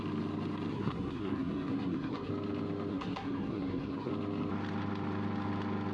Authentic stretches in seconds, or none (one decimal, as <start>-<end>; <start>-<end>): 0.0-0.7; 2.3-2.9; 4.1-5.9